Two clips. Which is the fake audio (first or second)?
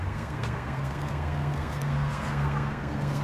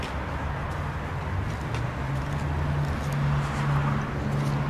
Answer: first